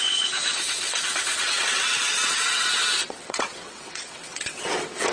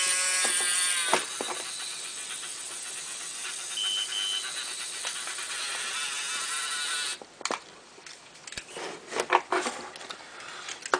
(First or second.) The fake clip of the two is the first